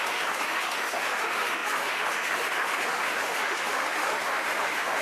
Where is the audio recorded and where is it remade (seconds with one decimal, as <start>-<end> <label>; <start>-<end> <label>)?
0.0-5.0 remade